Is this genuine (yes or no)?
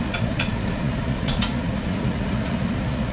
no